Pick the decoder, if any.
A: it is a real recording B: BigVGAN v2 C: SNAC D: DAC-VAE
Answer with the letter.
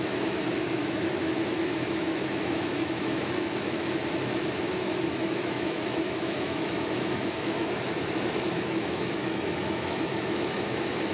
D